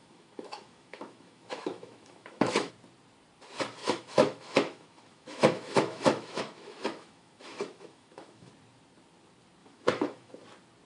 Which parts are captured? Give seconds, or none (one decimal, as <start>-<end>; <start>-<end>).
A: 2.7-3.8; 8.5-9.6; 10.3-10.9